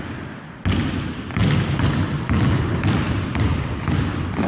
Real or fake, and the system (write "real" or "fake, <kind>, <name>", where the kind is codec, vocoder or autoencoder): real